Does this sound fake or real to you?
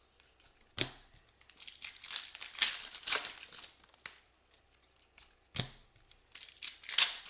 real